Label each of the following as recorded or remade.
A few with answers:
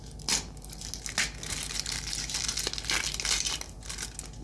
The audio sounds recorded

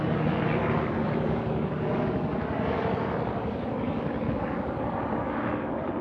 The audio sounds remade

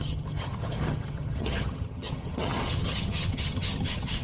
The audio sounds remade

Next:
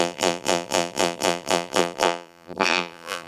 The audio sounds remade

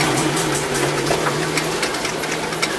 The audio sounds recorded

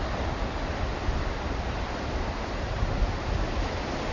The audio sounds recorded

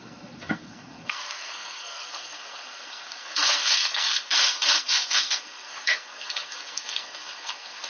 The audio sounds remade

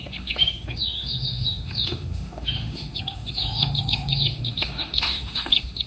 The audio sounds remade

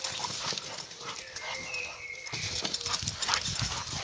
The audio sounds recorded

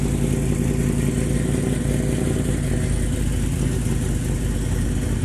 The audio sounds recorded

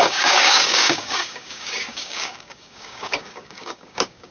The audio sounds remade